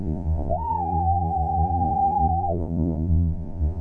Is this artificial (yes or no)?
yes